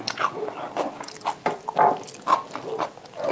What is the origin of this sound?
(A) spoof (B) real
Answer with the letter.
B